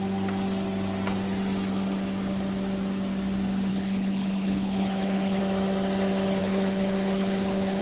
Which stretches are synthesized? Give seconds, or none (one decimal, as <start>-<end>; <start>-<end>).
3.7-5.4; 6.4-7.8